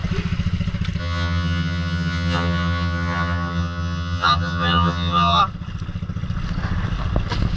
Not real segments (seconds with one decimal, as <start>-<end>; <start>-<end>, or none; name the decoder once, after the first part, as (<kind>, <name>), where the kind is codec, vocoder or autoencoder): 1.0-5.4 (vocoder, HiFi-GAN)